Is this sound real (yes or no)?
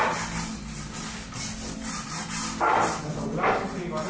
yes